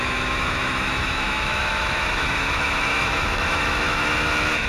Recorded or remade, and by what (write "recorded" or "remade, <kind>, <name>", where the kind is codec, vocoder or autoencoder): remade, autoencoder, DAC-VAE